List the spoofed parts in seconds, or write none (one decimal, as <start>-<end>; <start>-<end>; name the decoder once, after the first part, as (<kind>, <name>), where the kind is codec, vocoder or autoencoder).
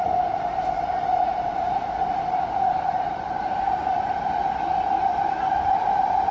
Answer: 1.3-4.0 (vocoder, BigVGAN v2); 5.1-6.3